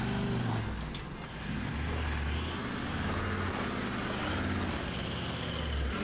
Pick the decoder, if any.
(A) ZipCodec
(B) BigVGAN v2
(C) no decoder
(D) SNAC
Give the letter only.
C